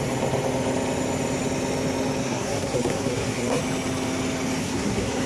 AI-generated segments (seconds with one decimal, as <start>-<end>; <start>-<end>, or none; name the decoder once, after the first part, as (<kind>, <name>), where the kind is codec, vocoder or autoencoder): 2.2-3.6 (codec, SNAC); 4.6-5.3